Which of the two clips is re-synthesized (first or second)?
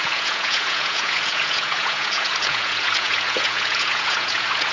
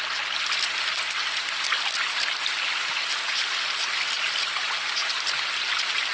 first